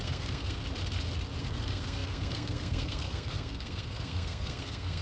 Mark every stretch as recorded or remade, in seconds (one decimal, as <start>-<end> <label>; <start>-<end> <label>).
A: 0.0-0.6 remade; 0.6-1.4 recorded; 1.4-5.0 remade